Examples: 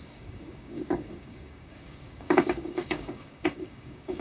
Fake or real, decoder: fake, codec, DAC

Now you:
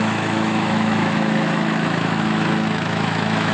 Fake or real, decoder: fake, autoencoder, DAC-VAE